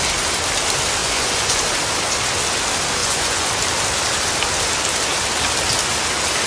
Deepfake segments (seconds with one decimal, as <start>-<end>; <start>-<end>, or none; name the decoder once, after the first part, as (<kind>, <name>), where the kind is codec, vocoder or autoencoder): 1.0-1.6 (vocoder, Vocos); 3.0-3.5